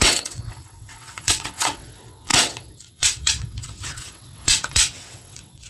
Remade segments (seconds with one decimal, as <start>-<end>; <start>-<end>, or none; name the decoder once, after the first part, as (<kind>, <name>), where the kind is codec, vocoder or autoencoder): 0.0-5.7 (vocoder, WaveNeXt)